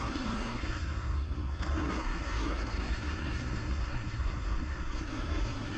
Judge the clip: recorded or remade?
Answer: remade